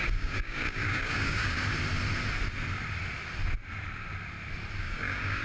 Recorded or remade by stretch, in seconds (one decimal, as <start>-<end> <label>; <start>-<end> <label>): 0.0-1.6 remade; 1.6-4.8 recorded; 4.8-5.4 remade